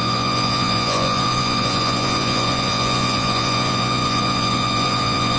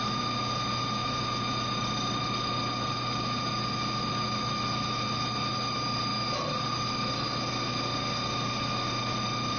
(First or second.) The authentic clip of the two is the second